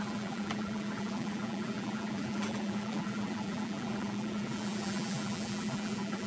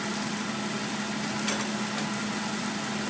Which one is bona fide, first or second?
second